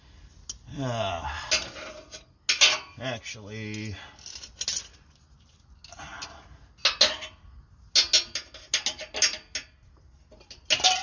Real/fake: real